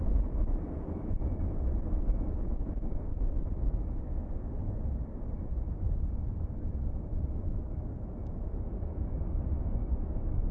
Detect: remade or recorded remade